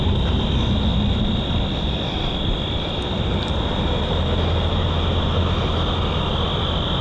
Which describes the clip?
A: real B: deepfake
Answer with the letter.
A